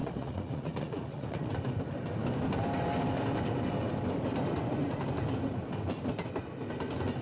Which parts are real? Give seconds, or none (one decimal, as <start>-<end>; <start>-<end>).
1.6-7.2